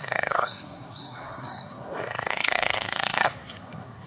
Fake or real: fake